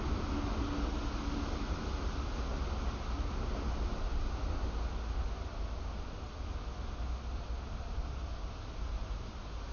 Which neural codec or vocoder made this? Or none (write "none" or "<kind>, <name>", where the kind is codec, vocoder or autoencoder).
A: none